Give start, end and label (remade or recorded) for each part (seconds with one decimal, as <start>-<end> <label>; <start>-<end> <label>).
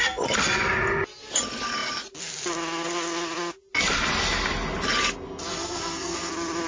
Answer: 0.0-5.5 recorded; 5.5-6.3 remade; 6.3-6.7 recorded